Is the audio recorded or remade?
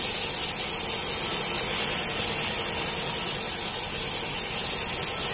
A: recorded